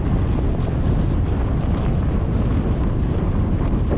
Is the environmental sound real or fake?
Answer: real